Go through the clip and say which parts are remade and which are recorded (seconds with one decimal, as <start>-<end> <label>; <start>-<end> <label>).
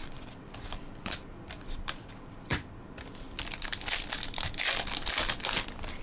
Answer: 0.0-3.6 remade; 3.6-6.0 recorded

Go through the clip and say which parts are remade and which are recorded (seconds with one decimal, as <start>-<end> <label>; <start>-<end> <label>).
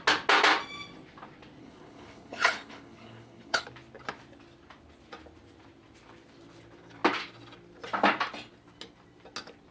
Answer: 0.0-1.6 recorded; 1.6-3.6 remade; 3.6-9.7 recorded